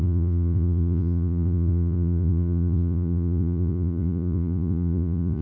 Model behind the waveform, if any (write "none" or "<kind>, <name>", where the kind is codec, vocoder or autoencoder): vocoder, Vocos